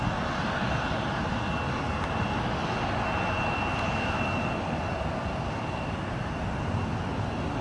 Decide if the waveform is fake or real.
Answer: real